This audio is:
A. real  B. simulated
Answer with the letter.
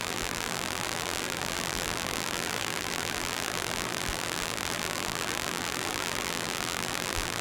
B